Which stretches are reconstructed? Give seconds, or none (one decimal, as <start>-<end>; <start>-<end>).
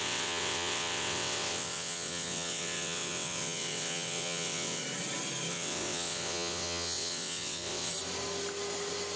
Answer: 0.0-4.8; 5.5-7.9